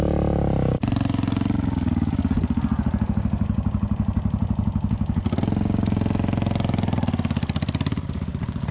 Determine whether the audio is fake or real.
real